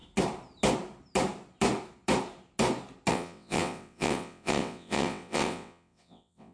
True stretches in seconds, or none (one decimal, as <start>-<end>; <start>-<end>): 0.0-3.1